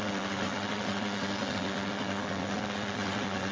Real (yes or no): no